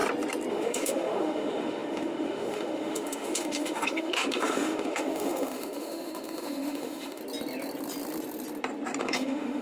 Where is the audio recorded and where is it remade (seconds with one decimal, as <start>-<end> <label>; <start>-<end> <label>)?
0.0-0.5 recorded; 0.5-7.2 remade; 7.2-9.0 recorded; 9.0-9.6 remade